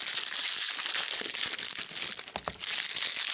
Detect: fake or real real